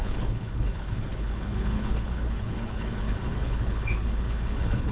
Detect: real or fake fake